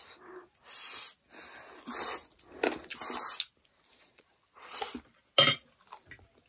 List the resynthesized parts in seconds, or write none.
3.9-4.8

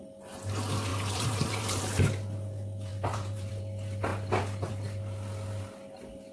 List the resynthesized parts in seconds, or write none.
0.9-1.8; 2.9-3.5